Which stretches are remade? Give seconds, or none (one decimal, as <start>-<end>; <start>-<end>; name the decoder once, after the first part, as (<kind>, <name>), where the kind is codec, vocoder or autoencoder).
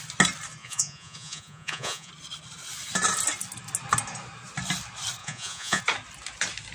0.6-2.1 (vocoder, Vocos); 5.2-5.8